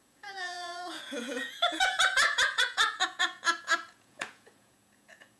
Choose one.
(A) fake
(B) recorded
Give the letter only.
A